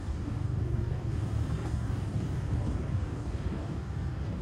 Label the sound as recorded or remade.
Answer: remade